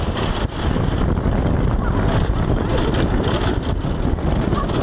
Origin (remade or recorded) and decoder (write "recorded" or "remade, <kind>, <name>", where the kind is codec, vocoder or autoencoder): recorded